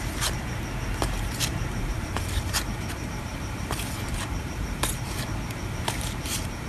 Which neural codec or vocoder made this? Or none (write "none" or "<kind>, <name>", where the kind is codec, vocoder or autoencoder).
vocoder, BigVGAN v2